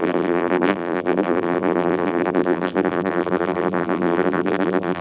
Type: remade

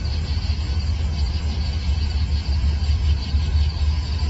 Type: recorded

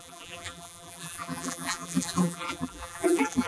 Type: remade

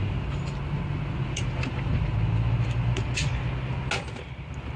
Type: recorded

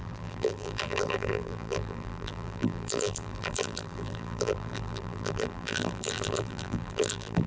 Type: remade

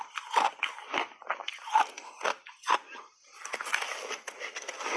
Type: recorded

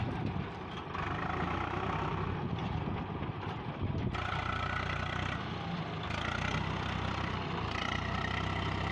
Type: remade